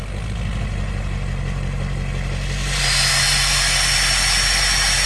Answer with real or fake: real